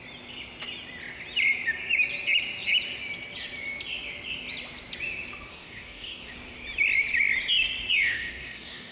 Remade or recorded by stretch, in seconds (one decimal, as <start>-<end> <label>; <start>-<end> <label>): 0.0-5.5 recorded; 5.5-6.3 remade; 6.3-8.1 recorded; 8.1-8.9 remade